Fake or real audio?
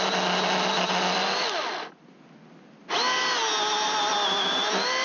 real